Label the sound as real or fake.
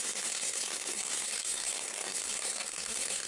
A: fake